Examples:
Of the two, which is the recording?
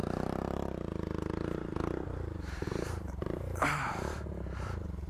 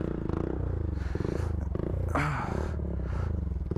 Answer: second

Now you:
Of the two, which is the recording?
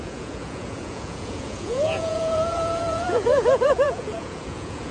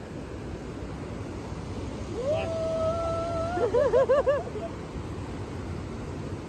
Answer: second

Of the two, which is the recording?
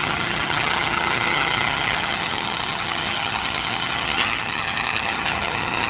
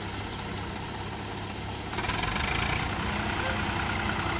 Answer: second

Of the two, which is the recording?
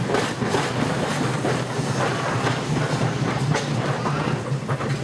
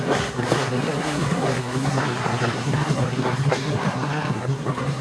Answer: first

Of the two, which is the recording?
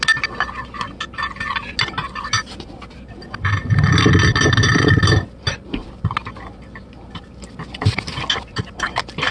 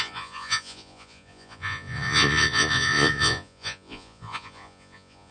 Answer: first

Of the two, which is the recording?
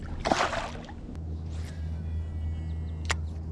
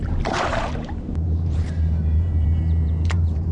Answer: first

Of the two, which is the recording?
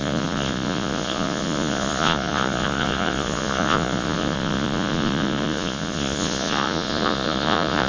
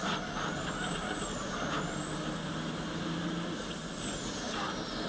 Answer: second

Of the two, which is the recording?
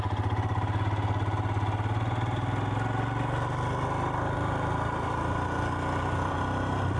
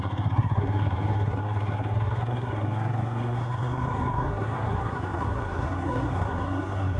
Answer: first